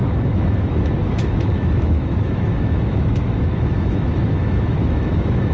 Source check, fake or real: fake